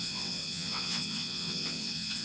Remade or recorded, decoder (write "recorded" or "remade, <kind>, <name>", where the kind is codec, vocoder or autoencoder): remade, vocoder, WaveNeXt